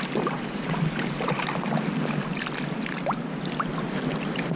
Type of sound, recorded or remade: recorded